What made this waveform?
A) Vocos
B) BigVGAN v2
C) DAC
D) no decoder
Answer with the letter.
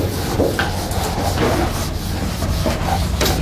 D